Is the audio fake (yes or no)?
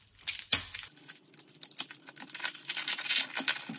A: no